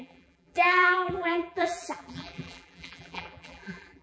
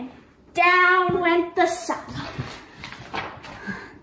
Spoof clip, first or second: first